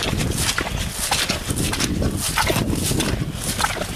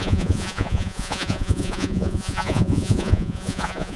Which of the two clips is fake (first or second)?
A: second